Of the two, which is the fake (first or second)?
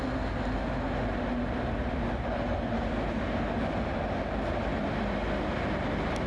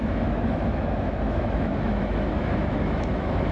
second